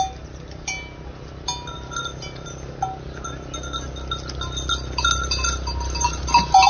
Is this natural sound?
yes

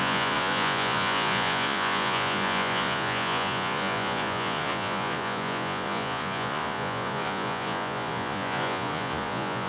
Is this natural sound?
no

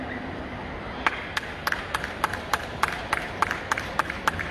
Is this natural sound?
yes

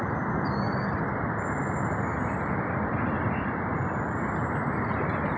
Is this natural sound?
yes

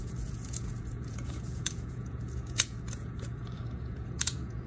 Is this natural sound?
no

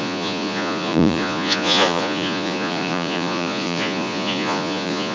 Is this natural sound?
no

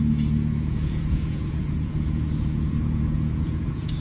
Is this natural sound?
no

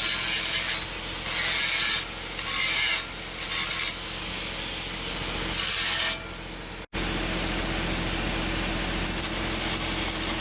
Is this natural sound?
yes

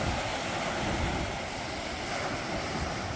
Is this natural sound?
yes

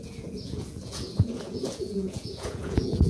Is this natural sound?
no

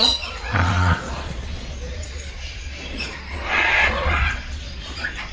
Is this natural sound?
no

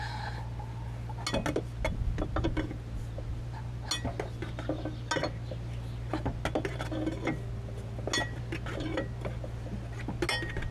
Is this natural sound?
yes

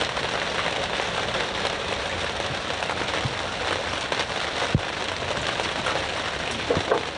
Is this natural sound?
yes